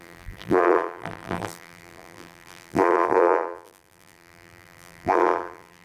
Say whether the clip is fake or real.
fake